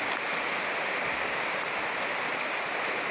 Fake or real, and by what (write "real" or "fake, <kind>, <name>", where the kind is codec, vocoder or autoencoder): real